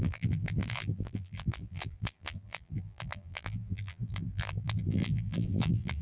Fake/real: fake